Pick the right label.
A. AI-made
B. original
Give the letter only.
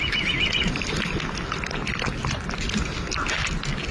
B